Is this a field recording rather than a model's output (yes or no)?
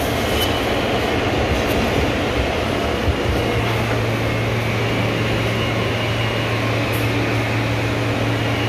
yes